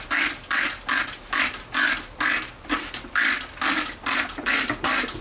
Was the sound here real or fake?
fake